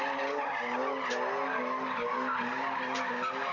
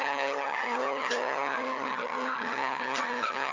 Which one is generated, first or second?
second